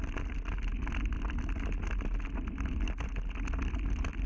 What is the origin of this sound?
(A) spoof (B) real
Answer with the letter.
B